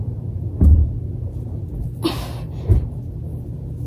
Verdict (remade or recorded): recorded